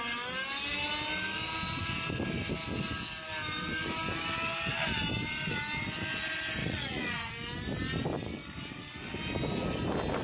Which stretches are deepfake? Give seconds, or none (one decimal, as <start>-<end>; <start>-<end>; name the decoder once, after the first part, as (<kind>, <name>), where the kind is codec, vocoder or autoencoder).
6.6-7.3 (vocoder, Vocos)

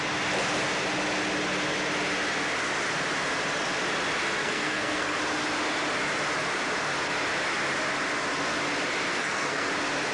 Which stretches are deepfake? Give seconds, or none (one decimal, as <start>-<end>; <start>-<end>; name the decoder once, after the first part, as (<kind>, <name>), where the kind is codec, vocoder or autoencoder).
4.4-5.2 (codec, SNAC); 9.1-9.7

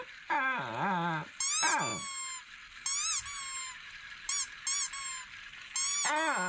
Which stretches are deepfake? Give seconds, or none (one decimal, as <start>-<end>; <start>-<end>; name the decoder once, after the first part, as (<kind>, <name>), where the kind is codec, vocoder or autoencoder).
none

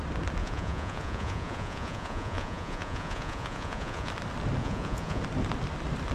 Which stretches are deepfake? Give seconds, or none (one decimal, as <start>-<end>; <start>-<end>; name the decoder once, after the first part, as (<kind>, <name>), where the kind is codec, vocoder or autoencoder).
0.4-4.1 (vocoder, Vocos); 4.6-5.2

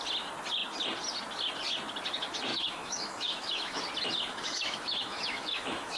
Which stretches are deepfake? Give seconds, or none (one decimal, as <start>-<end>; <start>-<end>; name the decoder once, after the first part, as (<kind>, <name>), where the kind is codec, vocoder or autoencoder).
2.5-3.8 (autoencoder, DAC-VAE); 4.3-6.0

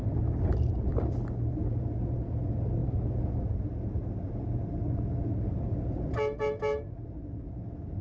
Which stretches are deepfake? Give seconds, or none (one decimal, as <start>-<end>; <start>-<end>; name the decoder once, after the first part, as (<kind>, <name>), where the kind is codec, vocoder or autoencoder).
none

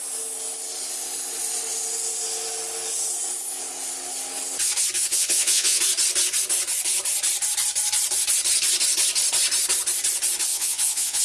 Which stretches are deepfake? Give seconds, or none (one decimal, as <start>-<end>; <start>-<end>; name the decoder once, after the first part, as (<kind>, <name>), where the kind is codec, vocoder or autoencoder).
5.1-5.8 (vocoder, Vocos); 10.5-11.2